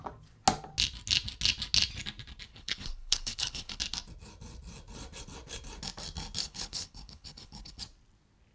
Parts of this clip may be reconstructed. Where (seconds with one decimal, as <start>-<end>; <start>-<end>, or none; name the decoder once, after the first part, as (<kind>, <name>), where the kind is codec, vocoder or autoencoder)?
2.5-3.8 (codec, HILCodec); 6.4-7.8